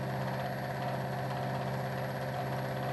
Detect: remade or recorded recorded